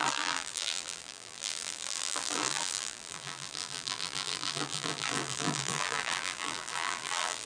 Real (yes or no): no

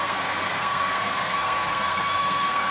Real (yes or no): no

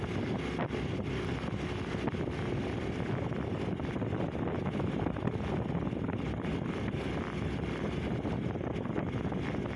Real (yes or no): yes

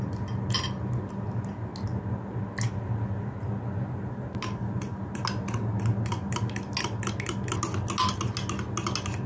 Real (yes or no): yes